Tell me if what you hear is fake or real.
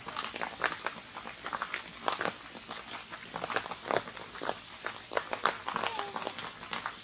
real